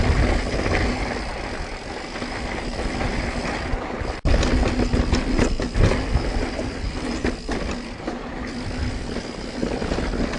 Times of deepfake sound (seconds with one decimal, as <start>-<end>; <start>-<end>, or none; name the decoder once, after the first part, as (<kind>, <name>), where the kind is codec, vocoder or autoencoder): none